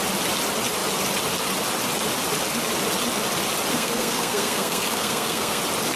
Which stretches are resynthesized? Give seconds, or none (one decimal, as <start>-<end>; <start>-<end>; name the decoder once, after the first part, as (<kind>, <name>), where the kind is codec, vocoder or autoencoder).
3.7-5.6 (codec, SNAC)